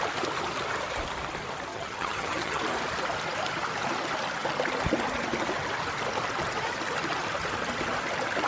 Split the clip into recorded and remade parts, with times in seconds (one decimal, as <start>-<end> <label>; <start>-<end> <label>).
0.0-1.7 recorded; 1.7-2.6 remade; 2.6-8.5 recorded